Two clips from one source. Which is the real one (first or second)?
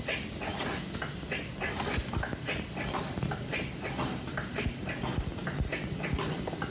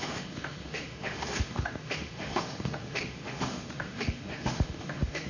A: first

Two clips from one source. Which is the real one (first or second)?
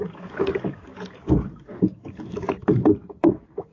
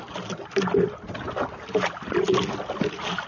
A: second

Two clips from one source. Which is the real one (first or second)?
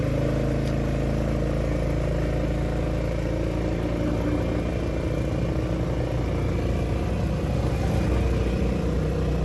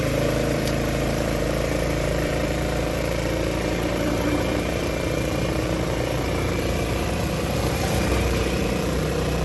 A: first